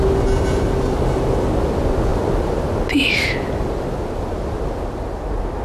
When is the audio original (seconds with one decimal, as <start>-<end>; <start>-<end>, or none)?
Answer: 0.0-5.6